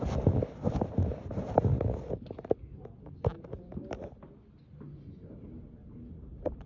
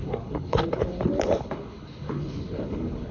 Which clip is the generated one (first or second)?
second